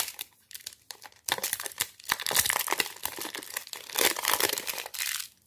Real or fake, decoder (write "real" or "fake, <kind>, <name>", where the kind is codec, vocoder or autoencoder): fake, vocoder, BigVGAN v2